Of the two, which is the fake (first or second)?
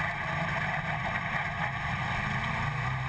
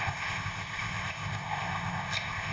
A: second